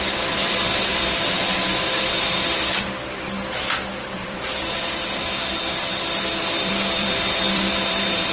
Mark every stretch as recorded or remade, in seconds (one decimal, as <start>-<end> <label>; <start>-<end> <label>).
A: 0.0-0.9 remade; 0.9-4.0 recorded; 4.0-8.3 remade